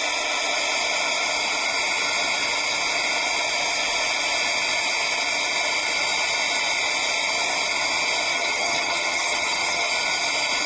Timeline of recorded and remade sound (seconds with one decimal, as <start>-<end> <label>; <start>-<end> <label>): 0.0-8.3 recorded; 8.3-9.9 remade; 9.9-10.7 recorded